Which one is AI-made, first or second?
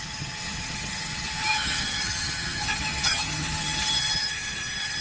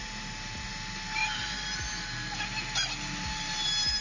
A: first